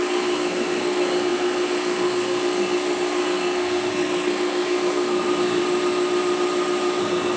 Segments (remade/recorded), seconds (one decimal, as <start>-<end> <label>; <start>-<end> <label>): 0.0-5.6 remade; 5.6-7.0 recorded; 7.0-7.4 remade